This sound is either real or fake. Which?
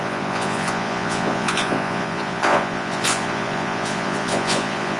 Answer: fake